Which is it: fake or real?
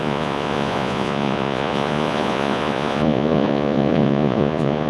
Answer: fake